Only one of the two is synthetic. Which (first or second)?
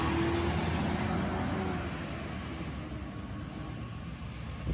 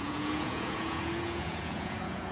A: second